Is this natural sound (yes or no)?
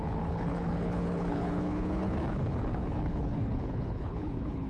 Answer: no